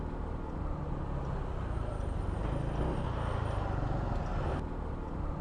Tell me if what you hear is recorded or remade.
recorded